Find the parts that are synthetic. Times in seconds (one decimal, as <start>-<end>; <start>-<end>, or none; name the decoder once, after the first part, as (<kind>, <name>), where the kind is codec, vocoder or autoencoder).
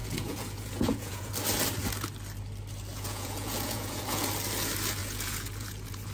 0.0-1.3 (vocoder, Vocos); 2.9-4.3; 5.0-6.1